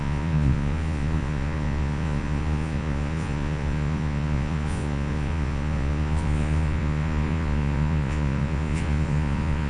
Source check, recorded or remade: remade